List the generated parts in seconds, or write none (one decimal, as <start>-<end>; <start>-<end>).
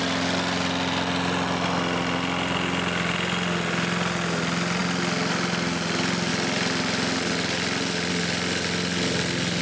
none